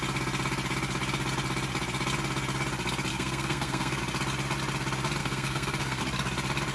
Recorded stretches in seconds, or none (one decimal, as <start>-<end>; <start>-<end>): 0.0-3.1; 4.0-5.2; 6.0-6.7

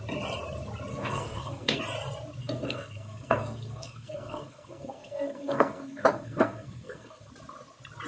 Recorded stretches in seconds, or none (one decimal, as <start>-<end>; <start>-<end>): 0.0-0.9; 1.8-2.4; 7.3-8.1

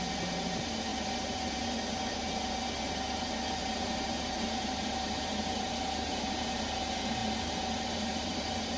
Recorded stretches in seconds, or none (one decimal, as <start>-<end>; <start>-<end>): 0.0-3.6; 6.8-7.2; 7.8-8.8

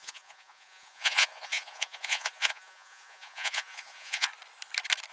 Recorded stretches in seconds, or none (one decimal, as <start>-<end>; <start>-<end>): 4.3-5.1

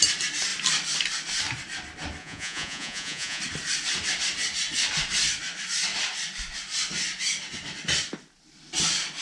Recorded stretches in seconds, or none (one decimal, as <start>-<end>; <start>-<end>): 0.0-2.2; 3.4-9.2